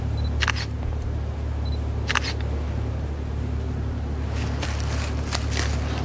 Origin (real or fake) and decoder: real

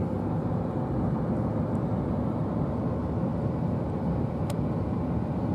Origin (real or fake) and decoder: real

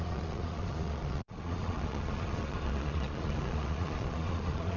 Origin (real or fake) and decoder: fake, vocoder, Vocos